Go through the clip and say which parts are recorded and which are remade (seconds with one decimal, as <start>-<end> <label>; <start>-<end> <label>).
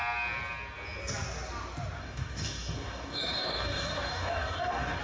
0.0-2.0 recorded; 2.0-5.0 remade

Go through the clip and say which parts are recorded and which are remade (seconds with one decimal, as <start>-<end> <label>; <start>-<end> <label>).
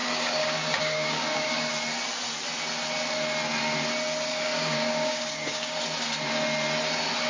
0.0-1.7 remade; 1.7-4.3 recorded; 4.3-5.8 remade; 5.8-7.3 recorded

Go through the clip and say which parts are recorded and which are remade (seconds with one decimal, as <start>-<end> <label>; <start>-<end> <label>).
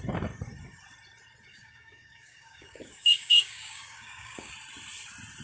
0.0-1.5 recorded; 1.5-4.5 remade; 4.5-5.4 recorded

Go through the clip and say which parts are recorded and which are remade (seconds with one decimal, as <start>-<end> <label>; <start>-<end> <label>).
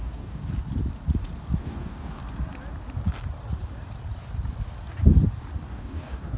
0.0-0.4 remade; 0.4-1.6 recorded; 1.6-2.2 remade; 2.2-5.7 recorded; 5.7-6.4 remade